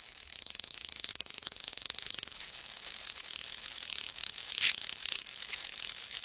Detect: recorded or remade remade